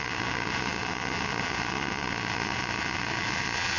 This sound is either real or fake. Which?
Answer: fake